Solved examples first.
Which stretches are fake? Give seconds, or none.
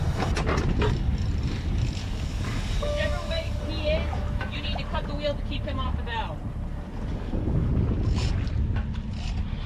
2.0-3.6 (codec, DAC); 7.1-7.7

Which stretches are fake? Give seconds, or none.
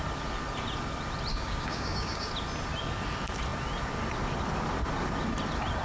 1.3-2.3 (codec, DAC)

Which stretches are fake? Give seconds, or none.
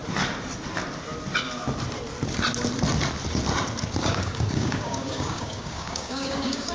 4.0-6.7 (codec, DAC)